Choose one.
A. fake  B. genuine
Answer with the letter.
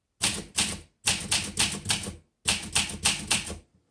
B